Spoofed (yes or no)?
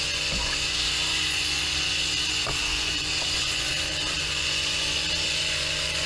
yes